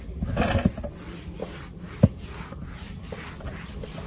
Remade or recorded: recorded